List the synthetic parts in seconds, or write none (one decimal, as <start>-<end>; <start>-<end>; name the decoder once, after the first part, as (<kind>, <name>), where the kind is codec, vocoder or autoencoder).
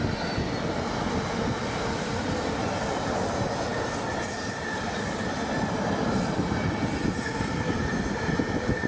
7.3-7.8 (vocoder, BigVGAN v2)